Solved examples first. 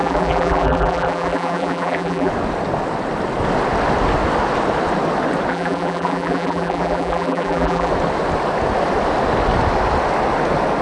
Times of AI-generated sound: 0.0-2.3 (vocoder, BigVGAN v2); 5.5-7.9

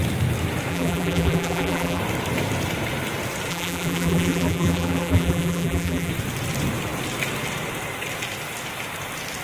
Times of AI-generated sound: 0.7-2.0 (vocoder, BigVGAN v2); 3.5-6.1

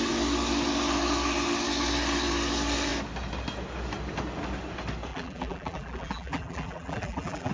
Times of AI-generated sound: 5.1-7.5 (vocoder, BigVGAN v2)

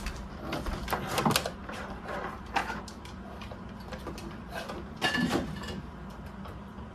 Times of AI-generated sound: 1.6-2.5 (vocoder, BigVGAN v2)

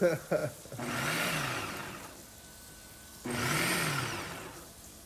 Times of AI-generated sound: none